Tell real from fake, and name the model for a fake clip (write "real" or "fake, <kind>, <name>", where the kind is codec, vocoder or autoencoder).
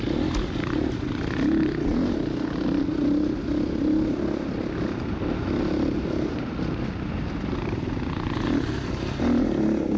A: real